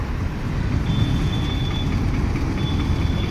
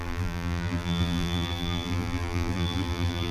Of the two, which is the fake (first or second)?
second